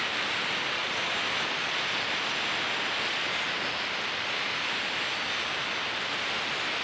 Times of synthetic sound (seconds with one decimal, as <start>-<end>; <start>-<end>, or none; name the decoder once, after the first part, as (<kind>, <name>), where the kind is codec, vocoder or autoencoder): none